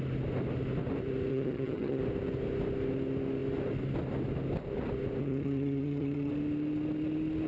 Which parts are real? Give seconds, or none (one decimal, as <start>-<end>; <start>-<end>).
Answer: 0.0-1.3; 2.0-5.2; 6.3-7.5